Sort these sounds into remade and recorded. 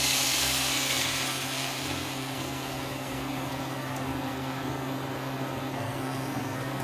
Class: remade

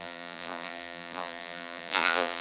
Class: remade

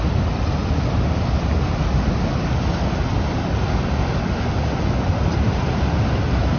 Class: recorded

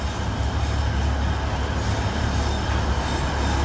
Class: recorded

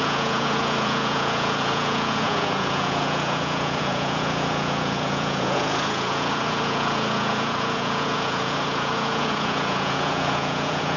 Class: remade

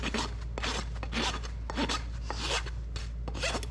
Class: recorded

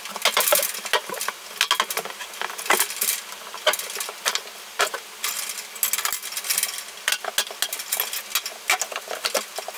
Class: recorded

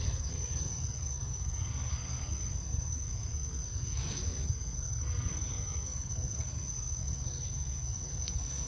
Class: remade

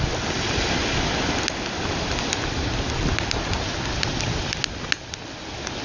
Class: recorded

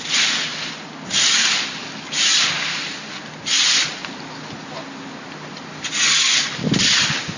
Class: recorded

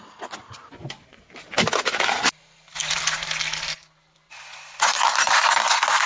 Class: recorded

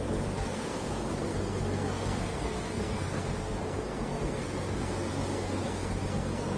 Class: remade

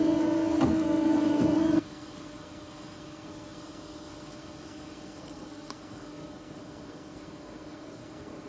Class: remade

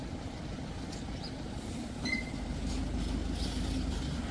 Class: recorded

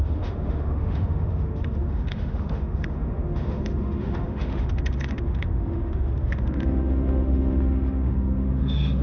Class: remade